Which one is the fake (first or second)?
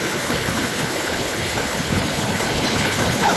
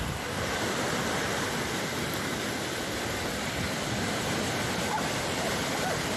first